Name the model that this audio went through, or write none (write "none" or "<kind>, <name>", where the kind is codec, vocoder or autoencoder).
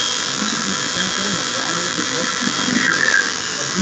vocoder, BigVGAN v2